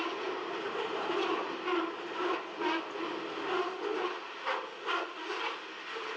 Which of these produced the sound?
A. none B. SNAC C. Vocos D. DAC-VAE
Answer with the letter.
A